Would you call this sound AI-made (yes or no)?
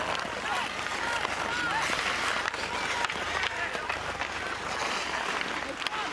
no